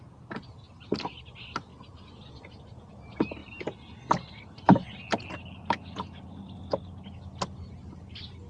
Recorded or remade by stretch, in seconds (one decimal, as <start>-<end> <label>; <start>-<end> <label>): 0.0-8.5 recorded